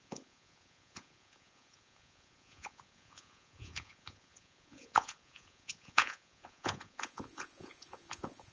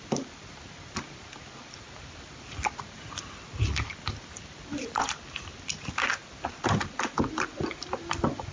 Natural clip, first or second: second